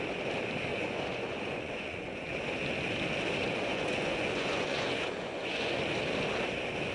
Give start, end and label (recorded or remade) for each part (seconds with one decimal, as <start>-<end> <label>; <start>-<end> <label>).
0.0-0.7 recorded; 0.7-2.3 remade; 2.3-3.4 recorded; 3.4-5.8 remade; 5.8-6.9 recorded